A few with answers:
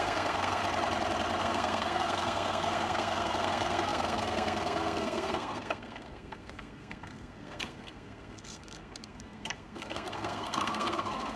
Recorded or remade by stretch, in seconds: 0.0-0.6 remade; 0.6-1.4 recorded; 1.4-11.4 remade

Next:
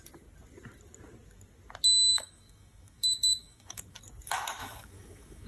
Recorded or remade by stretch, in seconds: 0.0-2.1 recorded; 2.1-4.0 remade; 4.0-4.6 recorded; 4.6-5.5 remade